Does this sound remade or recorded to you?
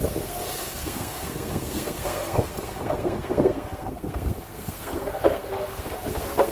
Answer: remade